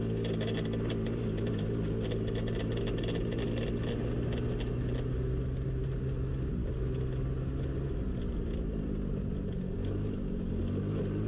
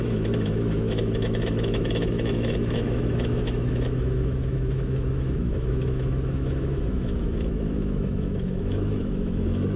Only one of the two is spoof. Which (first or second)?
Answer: second